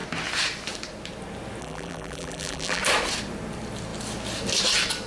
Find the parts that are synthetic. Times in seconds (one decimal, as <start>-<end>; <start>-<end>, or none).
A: 1.6-2.8